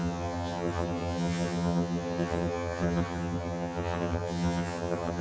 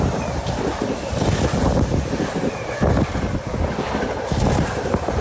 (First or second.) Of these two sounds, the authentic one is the second